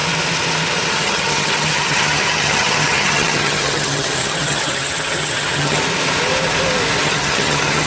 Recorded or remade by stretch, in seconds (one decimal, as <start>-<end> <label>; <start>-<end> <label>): 0.0-0.9 recorded; 0.9-5.8 remade; 5.8-7.0 recorded; 7.0-7.9 remade